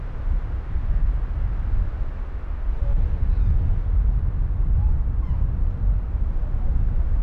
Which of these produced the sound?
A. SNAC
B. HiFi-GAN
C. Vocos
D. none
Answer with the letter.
D